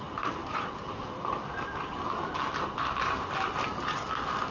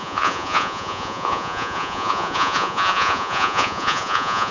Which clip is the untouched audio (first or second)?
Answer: first